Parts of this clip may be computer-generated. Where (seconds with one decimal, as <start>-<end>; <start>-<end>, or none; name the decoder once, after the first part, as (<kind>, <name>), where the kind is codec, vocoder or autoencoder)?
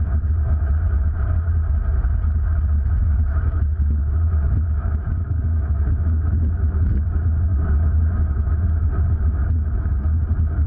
3.0-7.1 (autoencoder, DAC-VAE); 7.5-8.9